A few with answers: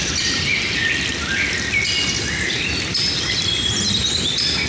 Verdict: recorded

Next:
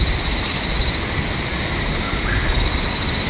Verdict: recorded